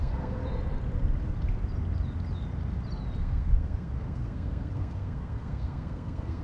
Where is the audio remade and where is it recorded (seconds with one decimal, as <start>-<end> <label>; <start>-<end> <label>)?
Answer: 0.0-0.4 remade; 0.4-3.2 recorded; 3.2-6.4 remade